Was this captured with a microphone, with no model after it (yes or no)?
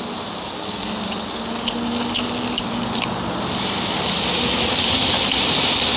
yes